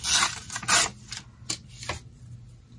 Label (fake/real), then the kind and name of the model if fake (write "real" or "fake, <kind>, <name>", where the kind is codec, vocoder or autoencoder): real